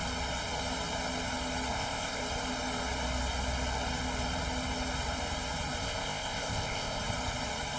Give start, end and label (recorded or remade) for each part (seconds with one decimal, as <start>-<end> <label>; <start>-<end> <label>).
0.0-1.7 recorded; 1.7-2.2 remade; 2.2-5.8 recorded; 5.8-7.0 remade; 7.0-7.8 recorded